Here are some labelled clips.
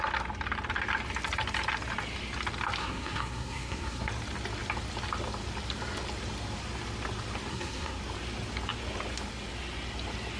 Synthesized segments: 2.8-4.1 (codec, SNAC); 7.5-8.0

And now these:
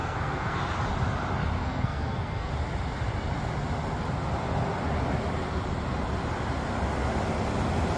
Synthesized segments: 0.0-0.6 (codec, SNAC); 1.6-2.5

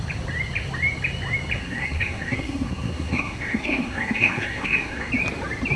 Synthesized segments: 1.6-5.1 (codec, SNAC)

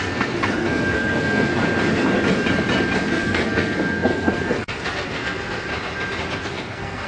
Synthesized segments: 0.0-1.5 (codec, SNAC); 3.1-5.7; 6.4-7.1

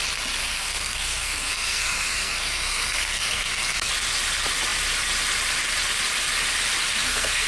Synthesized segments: 0.4-3.9 (codec, SNAC); 6.9-7.5

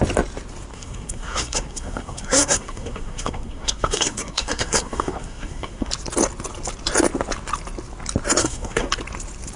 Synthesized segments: 0.7-5.9 (codec, SNAC); 8.4-8.9